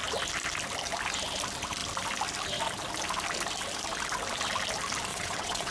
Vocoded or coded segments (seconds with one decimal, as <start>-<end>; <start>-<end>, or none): 5.1-5.7